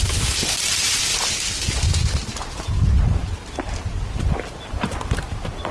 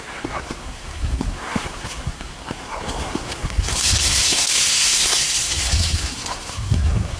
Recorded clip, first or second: first